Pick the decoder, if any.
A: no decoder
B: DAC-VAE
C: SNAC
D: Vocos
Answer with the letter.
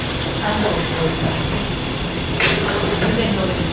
A